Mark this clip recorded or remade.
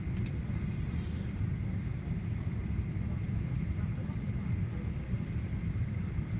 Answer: recorded